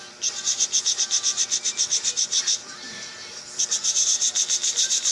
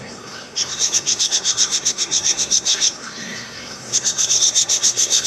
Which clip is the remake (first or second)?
second